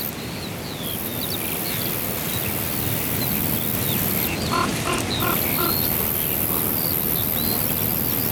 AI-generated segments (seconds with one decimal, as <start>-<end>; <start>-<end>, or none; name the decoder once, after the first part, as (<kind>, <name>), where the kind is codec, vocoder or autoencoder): none